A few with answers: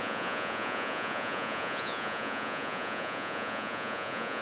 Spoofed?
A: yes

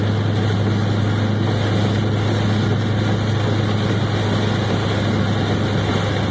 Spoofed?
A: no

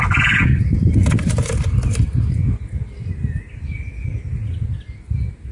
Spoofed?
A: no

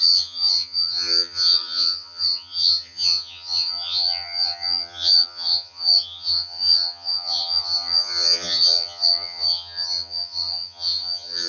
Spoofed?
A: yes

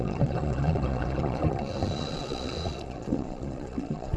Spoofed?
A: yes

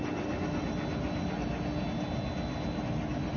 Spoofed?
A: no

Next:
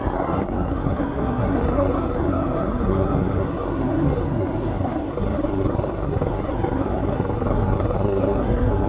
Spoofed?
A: yes